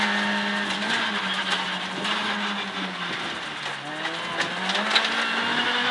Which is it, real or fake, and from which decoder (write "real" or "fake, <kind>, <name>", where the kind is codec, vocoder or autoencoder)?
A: real